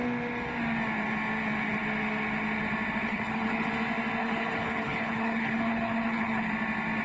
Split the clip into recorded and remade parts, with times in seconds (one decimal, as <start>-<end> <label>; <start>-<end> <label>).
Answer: 0.0-3.1 recorded; 3.1-3.7 remade; 3.7-4.2 recorded; 4.2-6.5 remade; 6.5-7.0 recorded